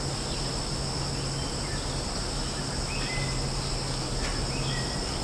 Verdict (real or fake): real